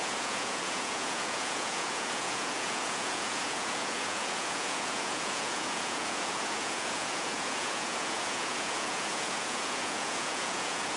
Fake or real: fake